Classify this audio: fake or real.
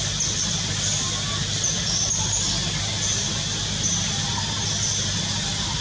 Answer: real